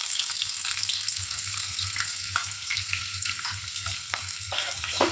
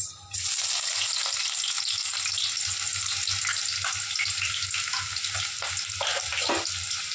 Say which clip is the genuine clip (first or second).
second